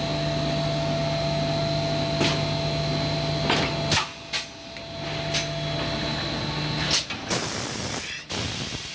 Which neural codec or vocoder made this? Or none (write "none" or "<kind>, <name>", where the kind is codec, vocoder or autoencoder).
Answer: none